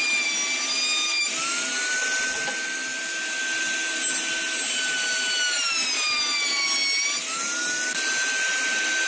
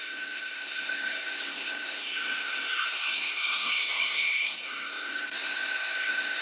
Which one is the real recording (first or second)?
first